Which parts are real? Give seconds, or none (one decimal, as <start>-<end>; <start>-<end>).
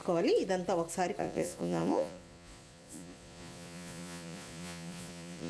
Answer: 0.0-1.2